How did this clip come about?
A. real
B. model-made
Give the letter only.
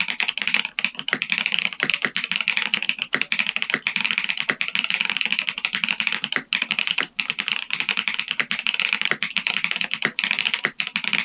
A